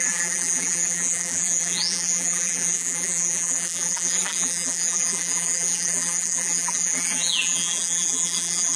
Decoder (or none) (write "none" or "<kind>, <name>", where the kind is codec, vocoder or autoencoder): vocoder, BigVGAN v2